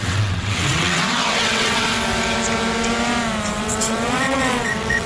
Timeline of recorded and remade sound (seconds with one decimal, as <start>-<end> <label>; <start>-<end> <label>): 0.0-1.9 remade; 1.9-3.6 recorded; 3.6-5.1 remade